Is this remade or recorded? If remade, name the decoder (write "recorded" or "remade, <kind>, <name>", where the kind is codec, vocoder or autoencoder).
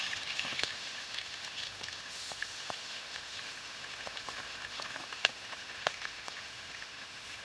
remade, autoencoder, DAC-VAE